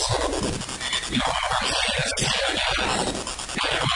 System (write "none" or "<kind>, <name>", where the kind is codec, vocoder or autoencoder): none